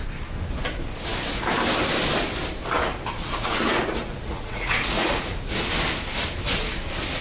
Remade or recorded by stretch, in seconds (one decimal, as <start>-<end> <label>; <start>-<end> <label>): 0.0-3.2 recorded; 3.2-5.6 remade; 5.6-7.2 recorded